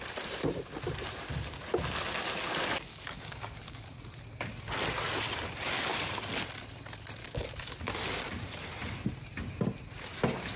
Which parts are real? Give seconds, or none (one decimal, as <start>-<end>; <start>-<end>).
0.0-2.9; 3.8-7.2; 7.8-10.6